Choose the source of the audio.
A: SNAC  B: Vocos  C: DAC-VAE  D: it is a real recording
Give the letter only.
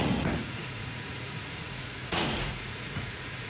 B